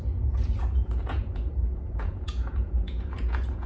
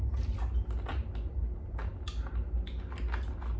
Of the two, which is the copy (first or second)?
first